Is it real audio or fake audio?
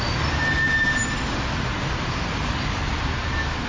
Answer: real